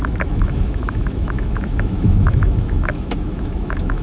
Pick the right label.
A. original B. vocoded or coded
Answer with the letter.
B